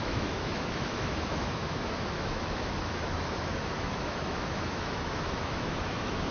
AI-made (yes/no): yes